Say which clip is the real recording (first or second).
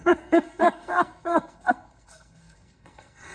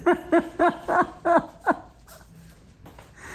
second